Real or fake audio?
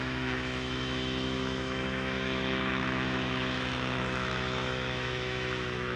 fake